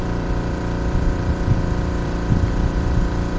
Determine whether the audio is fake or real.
fake